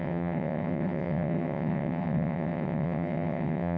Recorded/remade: remade